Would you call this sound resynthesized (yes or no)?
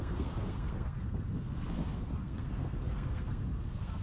yes